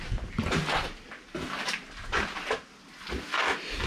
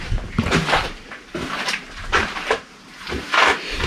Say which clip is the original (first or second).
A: first